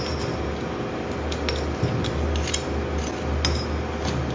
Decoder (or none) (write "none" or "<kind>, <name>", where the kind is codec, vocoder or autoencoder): none